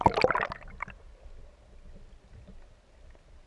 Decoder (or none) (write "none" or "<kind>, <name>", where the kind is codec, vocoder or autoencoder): none